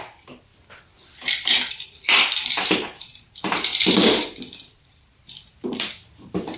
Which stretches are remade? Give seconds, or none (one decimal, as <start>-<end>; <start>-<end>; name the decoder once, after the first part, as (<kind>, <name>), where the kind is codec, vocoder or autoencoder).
0.0-0.5 (vocoder, BigVGAN v2); 1.7-6.6